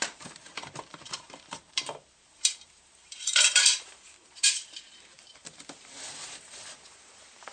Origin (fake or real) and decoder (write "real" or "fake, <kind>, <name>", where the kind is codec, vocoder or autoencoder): fake, vocoder, BigVGAN v2